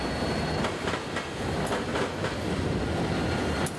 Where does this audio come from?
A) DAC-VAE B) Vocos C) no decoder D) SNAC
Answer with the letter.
C